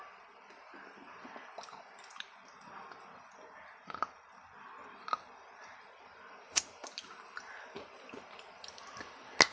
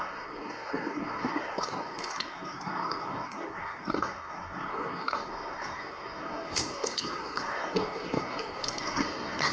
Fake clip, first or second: second